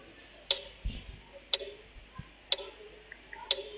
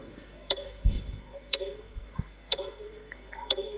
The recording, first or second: first